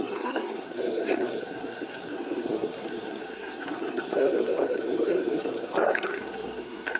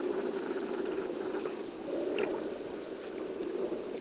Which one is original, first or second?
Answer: second